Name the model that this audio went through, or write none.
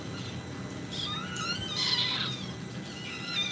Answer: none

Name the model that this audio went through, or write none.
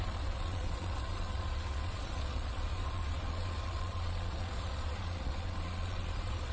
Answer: vocoder, Vocos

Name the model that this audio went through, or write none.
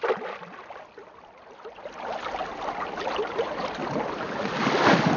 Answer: none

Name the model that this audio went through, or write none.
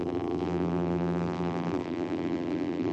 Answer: vocoder, BigVGAN v2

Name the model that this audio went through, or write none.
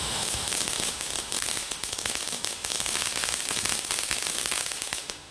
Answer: autoencoder, DAC-VAE